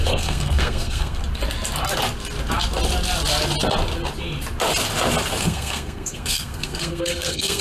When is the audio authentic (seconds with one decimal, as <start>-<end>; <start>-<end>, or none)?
1.2-5.4